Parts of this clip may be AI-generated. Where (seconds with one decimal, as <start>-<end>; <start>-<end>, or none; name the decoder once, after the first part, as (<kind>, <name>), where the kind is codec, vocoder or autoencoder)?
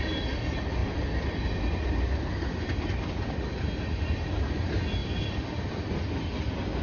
0.8-3.5 (vocoder, BigVGAN v2); 5.0-5.8